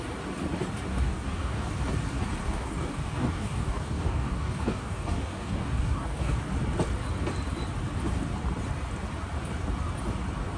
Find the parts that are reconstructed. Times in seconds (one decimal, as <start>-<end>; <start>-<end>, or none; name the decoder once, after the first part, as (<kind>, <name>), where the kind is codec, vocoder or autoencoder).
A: 0.9-1.7 (codec, DAC); 2.4-6.5